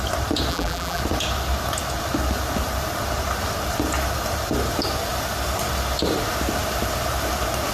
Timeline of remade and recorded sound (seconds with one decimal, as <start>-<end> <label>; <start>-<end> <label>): 0.0-0.5 recorded; 0.5-1.0 remade; 1.0-7.7 recorded